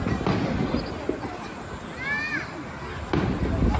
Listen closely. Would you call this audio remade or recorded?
recorded